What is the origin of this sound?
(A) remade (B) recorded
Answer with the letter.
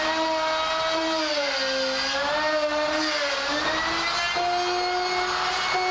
B